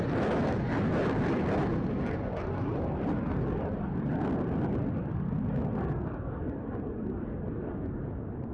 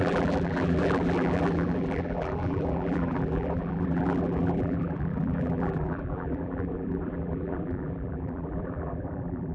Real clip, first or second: first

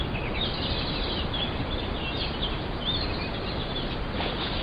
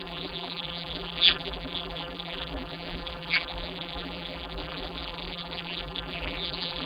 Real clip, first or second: first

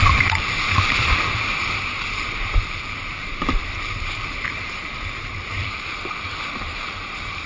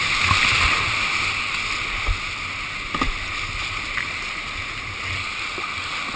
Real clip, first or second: second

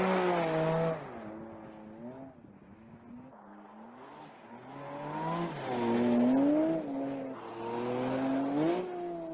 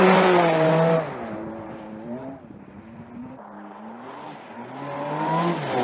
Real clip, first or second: first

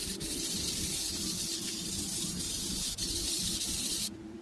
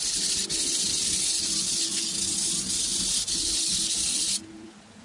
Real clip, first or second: second